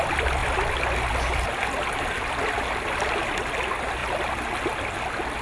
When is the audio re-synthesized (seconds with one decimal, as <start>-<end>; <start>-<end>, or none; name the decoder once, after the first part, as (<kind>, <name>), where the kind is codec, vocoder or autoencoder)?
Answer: none